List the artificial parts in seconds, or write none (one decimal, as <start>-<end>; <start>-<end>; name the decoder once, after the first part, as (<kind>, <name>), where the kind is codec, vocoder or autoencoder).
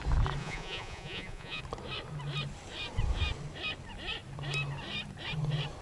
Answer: 0.4-1.6 (vocoder, Vocos)